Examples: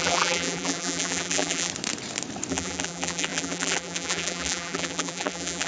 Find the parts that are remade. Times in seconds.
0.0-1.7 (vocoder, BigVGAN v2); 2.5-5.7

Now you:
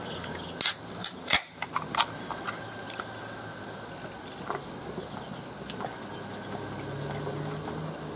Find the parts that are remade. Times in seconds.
1.0-2.1 (vocoder, BigVGAN v2)